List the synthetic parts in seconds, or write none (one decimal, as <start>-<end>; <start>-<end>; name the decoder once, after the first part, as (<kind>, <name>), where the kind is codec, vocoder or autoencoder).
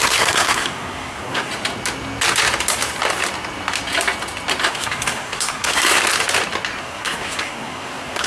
0.0-1.5 (codec, SNAC); 4.7-6.0; 6.8-8.3